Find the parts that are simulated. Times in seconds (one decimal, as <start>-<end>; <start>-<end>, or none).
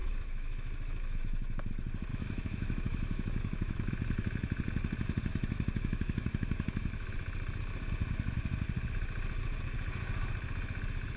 0.0-1.7; 2.1-3.9; 5.3-7.1